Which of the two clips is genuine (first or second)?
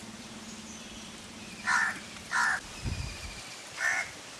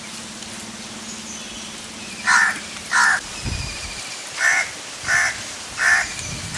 second